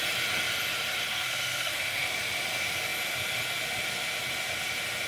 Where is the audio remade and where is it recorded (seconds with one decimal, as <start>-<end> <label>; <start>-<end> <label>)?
0.0-1.1 recorded; 1.1-2.1 remade; 2.1-5.1 recorded